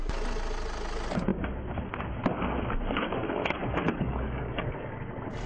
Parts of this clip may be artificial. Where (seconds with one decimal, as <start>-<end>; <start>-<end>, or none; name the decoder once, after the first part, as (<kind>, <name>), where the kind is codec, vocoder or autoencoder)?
3.6-5.0 (codec, DAC)